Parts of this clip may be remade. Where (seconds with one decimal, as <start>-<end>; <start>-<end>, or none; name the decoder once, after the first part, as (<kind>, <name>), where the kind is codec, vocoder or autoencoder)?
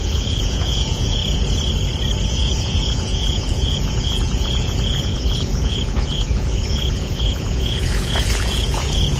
0.0-1.2 (vocoder, Vocos); 2.3-9.2